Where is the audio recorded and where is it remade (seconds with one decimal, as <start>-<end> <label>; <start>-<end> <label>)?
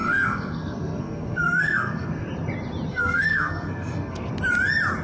0.0-2.3 remade; 2.3-2.9 recorded; 2.9-4.3 remade; 4.3-5.0 recorded